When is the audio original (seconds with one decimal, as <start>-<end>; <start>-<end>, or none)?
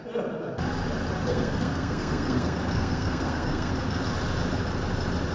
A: 0.0-1.3; 3.7-5.3